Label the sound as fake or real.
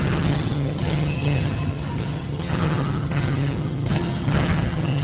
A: fake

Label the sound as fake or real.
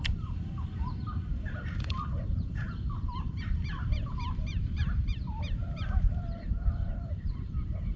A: fake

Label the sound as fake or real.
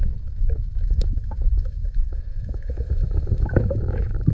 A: fake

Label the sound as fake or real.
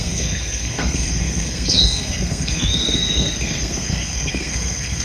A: fake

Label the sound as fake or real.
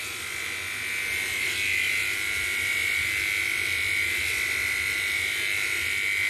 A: real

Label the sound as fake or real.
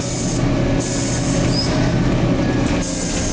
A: real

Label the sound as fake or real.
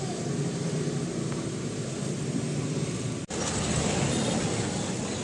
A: real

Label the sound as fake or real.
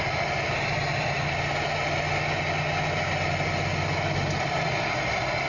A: real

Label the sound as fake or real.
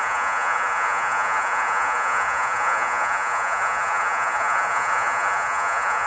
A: fake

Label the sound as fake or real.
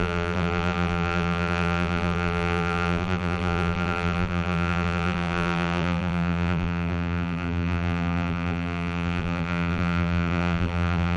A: fake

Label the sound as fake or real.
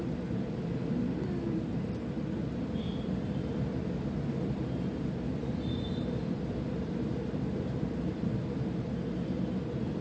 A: fake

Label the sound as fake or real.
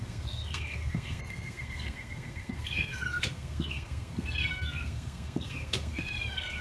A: fake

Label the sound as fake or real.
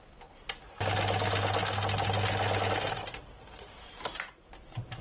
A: real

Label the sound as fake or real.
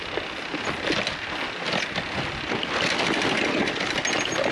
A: real